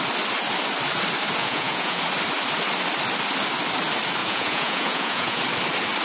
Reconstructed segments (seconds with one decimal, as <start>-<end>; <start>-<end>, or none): 1.4-2.0; 4.2-5.4